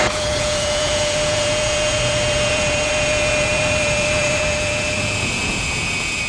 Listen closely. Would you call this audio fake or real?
fake